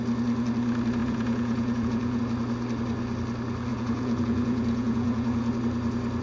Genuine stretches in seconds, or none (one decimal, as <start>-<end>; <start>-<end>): 0.0-1.0; 2.2-3.7; 5.5-6.2